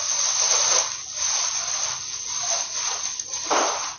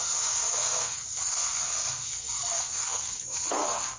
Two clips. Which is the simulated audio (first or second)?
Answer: second